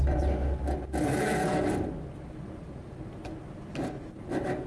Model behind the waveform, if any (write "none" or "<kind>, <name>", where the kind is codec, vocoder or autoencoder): none